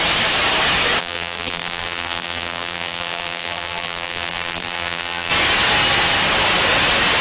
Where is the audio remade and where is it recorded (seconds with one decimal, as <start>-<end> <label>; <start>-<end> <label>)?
0.0-1.0 recorded; 1.0-5.3 remade; 5.3-7.2 recorded